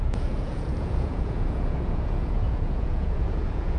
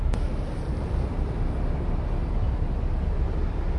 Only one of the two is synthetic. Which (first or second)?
first